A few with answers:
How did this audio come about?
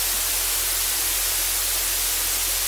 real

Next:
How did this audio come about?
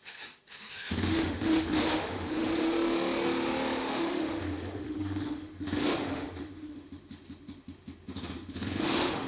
fake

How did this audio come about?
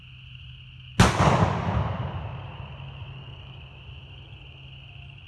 real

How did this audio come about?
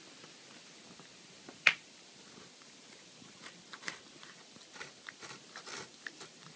fake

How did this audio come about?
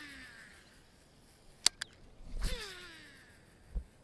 real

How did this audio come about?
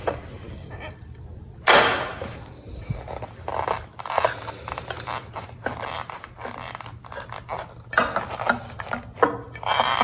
real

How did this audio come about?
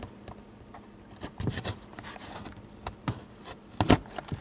real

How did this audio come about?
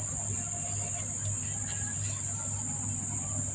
real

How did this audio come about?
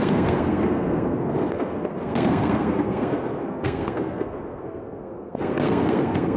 fake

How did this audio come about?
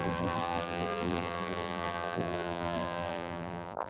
fake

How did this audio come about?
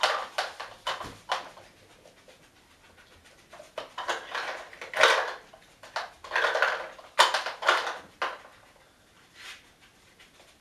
real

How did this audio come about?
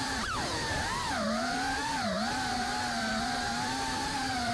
fake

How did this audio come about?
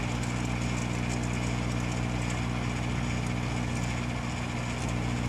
real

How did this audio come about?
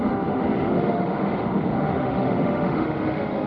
fake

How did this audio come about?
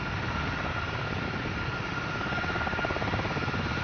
real